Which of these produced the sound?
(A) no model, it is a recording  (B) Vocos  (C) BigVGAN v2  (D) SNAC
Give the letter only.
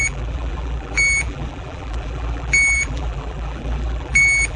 C